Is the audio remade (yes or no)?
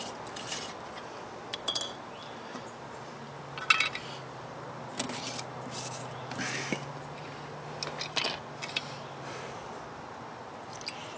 no